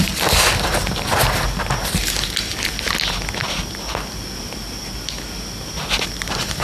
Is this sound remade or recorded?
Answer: recorded